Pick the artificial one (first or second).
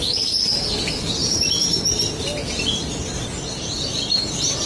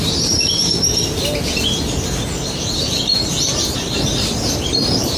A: second